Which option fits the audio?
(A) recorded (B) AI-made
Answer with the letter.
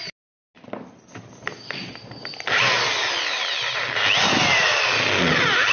A